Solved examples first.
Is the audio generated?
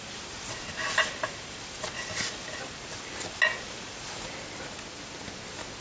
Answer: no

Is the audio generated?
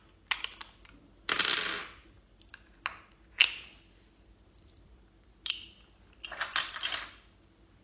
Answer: no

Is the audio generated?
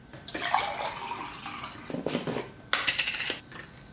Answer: no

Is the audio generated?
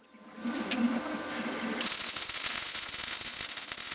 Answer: no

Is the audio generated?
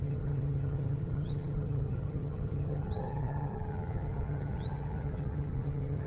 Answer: yes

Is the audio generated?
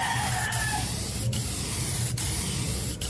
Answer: no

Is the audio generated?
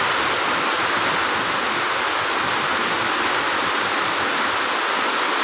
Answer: no